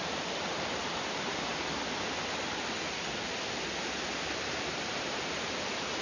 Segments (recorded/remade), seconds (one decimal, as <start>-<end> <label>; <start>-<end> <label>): 0.0-1.5 remade; 1.5-4.2 recorded; 4.2-6.0 remade